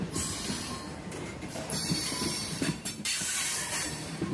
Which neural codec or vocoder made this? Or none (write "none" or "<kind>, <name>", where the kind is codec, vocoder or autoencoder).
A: vocoder, BigVGAN v2